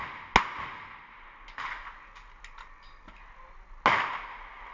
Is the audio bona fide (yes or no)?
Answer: yes